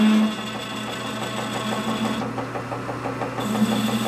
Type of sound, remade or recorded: recorded